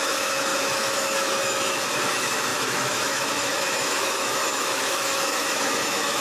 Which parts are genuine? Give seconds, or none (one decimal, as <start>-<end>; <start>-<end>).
none